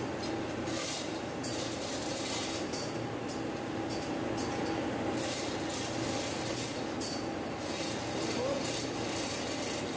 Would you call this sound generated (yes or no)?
no